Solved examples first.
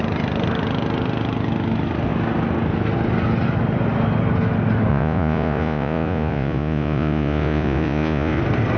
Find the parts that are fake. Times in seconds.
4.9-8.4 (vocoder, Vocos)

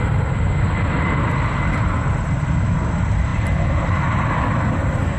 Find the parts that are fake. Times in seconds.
none

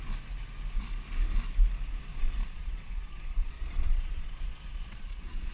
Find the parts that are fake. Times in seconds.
2.1-5.5 (vocoder, Vocos)

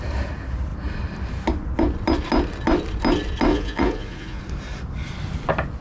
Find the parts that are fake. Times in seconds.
3.5-4.4 (vocoder, Vocos)

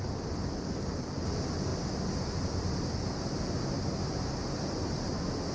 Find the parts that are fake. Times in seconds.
none